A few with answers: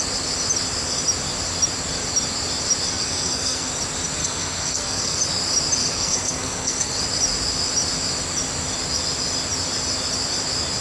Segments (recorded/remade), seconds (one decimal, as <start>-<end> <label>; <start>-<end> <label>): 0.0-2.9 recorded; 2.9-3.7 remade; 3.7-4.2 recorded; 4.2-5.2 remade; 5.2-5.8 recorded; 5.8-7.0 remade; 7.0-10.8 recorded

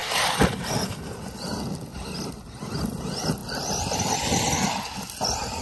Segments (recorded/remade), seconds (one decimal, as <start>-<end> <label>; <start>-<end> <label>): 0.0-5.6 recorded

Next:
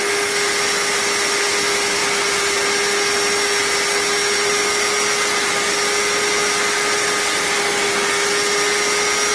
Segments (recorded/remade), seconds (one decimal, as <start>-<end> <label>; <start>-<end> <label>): 0.0-9.3 recorded